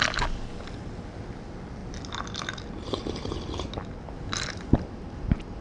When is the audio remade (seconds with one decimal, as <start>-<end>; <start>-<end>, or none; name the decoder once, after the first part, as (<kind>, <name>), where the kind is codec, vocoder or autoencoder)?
none